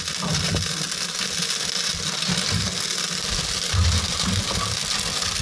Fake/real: real